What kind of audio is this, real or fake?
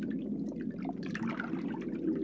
real